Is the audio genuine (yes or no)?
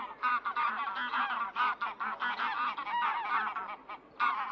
yes